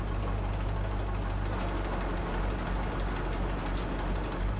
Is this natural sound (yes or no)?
yes